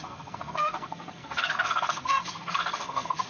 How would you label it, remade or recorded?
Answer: remade